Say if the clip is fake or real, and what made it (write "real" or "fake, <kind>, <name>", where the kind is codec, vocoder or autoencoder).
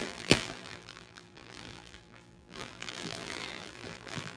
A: fake, vocoder, BigVGAN v2